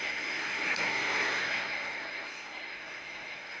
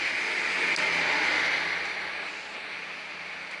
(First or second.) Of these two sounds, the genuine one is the second